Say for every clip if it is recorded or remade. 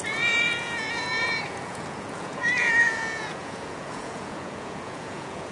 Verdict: remade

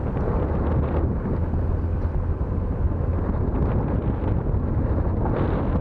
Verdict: recorded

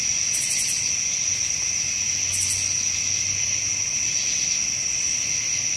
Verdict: recorded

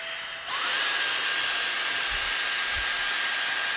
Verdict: recorded